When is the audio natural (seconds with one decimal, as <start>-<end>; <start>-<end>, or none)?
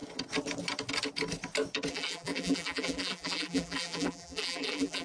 0.0-1.9